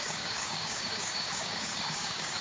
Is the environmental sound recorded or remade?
remade